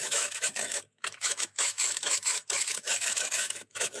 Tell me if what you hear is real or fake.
fake